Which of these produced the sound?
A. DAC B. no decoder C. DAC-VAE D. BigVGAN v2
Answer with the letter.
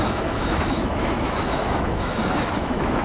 C